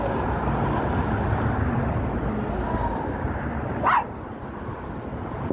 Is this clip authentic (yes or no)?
yes